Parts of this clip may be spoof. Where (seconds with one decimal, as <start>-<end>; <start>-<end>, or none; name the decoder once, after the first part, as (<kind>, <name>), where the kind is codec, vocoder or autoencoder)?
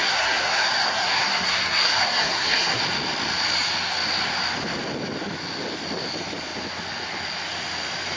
0.0-2.8 (codec, SNAC)